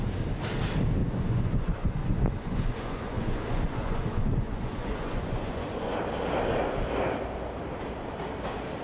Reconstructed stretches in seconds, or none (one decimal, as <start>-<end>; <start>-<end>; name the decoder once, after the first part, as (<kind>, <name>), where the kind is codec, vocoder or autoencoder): 1.0-6.0 (vocoder, Vocos)